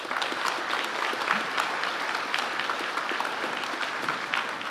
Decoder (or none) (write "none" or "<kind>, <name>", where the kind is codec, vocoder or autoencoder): none